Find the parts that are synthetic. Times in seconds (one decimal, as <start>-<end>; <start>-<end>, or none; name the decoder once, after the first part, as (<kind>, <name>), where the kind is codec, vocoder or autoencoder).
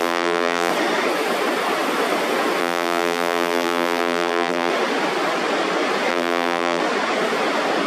0.0-0.7 (vocoder, BigVGAN v2); 2.6-4.7; 6.1-6.8